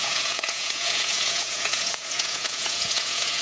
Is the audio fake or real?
fake